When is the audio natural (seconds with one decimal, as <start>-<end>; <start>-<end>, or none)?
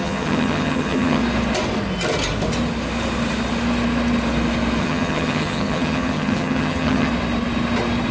1.2-4.8; 7.1-8.1